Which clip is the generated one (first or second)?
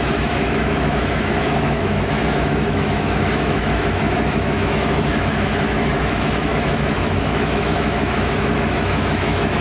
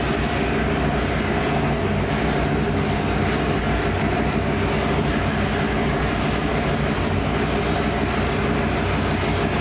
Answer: first